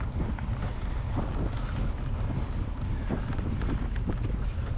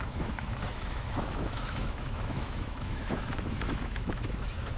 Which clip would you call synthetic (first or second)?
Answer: second